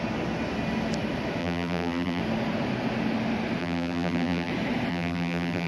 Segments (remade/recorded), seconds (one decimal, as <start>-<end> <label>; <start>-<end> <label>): 0.0-1.4 recorded; 1.4-2.2 remade; 2.2-3.6 recorded; 3.6-4.5 remade; 4.5-4.9 recorded; 4.9-5.7 remade